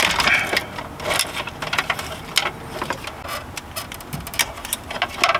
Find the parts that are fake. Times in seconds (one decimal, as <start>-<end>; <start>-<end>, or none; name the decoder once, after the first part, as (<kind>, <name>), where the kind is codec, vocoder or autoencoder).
none